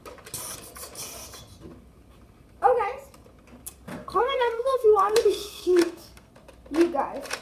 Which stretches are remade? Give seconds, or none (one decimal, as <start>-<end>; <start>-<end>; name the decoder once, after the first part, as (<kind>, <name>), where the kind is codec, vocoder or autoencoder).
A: 3.9-6.3 (codec, SNAC)